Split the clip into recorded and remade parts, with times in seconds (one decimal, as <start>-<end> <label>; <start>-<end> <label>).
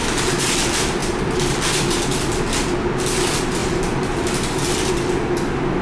0.0-1.0 recorded; 1.0-2.4 remade; 2.4-3.6 recorded; 3.6-4.9 remade; 4.9-5.8 recorded